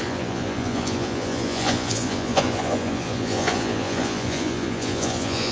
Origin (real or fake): fake